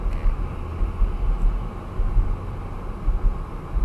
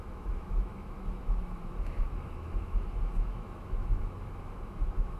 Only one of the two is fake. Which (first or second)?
second